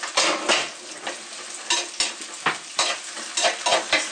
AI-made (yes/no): no